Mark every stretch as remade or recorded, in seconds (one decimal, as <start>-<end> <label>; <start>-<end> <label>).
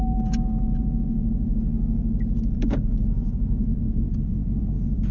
0.0-1.7 remade; 1.7-2.5 recorded; 2.5-5.1 remade